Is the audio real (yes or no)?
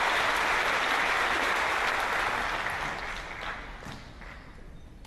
yes